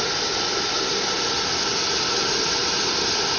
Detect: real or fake real